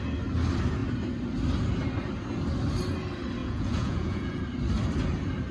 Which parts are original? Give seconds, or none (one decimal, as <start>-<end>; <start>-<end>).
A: 0.0-3.4; 4.4-5.5